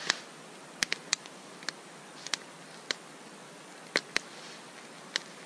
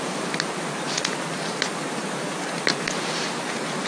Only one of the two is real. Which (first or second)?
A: first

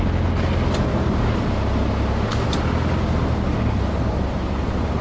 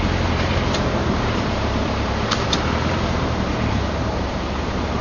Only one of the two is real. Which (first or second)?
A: first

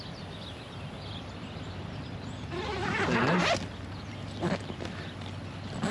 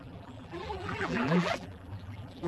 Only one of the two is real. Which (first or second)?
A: first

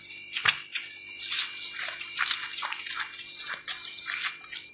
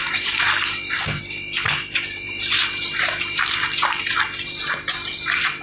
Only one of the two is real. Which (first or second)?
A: first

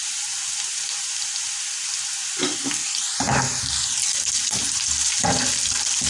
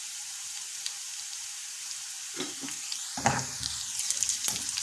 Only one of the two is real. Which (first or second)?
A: first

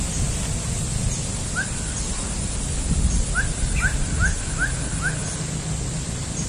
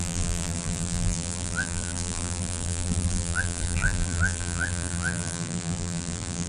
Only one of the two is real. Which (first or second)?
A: first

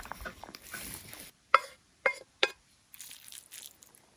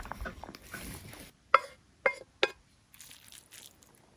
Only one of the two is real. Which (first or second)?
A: second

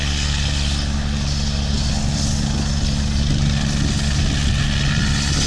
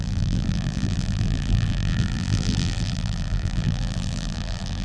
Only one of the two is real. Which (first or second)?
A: first